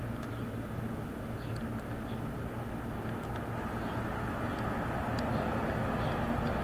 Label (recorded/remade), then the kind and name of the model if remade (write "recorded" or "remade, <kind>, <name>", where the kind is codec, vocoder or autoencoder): recorded